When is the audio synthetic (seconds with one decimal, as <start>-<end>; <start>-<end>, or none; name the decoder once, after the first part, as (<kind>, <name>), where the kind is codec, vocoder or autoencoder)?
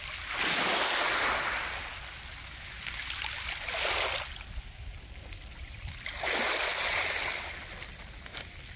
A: none